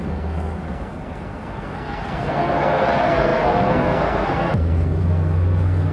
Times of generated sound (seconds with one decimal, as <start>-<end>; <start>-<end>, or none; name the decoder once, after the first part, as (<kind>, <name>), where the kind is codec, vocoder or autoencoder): 0.0-5.9 (codec, SNAC)